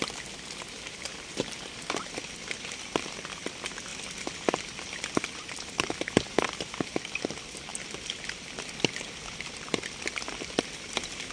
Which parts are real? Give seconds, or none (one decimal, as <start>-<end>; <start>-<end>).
0.0-11.3